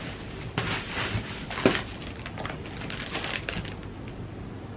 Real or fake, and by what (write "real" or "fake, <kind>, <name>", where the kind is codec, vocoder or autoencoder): real